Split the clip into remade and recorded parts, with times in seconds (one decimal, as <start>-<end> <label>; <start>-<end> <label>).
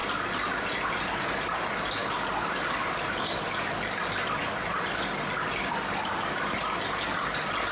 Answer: 0.0-7.7 recorded